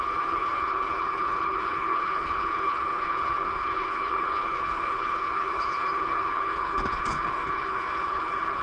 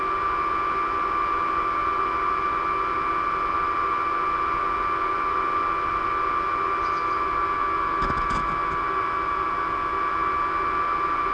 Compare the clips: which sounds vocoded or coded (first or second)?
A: first